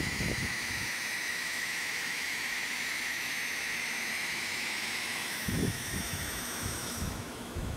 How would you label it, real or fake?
fake